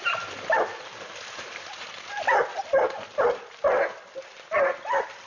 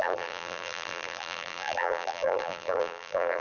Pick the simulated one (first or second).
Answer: second